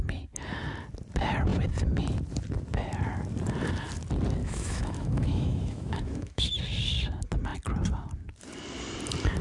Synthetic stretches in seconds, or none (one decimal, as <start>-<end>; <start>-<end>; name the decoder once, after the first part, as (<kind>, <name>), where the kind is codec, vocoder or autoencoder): 4.4-6.5 (autoencoder, DAC-VAE)